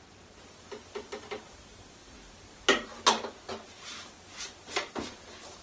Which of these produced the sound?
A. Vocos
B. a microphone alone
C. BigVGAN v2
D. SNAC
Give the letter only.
B